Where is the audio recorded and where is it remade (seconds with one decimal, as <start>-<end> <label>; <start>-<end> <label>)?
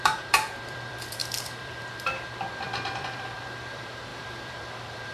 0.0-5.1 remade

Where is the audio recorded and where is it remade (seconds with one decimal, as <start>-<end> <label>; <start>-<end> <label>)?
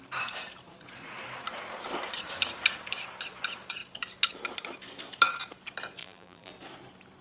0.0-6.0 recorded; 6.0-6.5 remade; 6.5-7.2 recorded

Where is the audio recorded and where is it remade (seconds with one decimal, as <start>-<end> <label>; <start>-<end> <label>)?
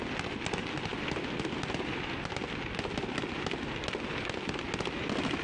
0.0-5.4 recorded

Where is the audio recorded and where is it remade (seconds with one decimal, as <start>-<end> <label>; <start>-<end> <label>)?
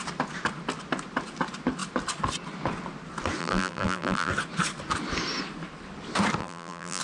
0.0-3.4 recorded; 3.4-4.3 remade; 4.3-6.4 recorded; 6.4-7.0 remade